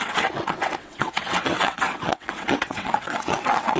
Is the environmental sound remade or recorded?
remade